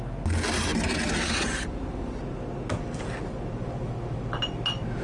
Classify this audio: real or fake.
real